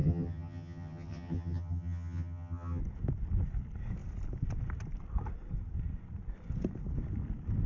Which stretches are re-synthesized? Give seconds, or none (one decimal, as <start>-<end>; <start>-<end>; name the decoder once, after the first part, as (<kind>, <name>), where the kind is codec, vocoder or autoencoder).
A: 0.0-2.8 (vocoder, HiFi-GAN)